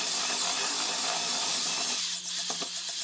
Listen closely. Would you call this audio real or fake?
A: real